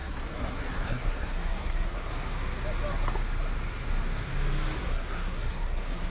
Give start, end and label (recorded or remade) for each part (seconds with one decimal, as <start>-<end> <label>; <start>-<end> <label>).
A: 0.0-2.1 remade; 2.1-4.8 recorded; 4.8-6.1 remade

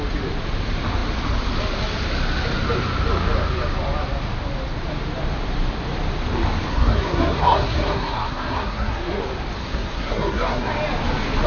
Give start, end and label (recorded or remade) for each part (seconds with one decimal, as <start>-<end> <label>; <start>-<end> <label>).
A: 0.0-6.7 recorded; 6.7-9.2 remade; 9.2-9.6 recorded; 9.6-10.7 remade; 10.7-11.5 recorded

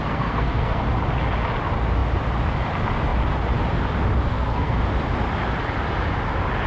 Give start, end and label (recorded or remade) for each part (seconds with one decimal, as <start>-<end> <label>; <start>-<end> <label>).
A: 0.0-0.8 remade; 0.8-4.3 recorded; 4.3-4.8 remade; 4.8-6.7 recorded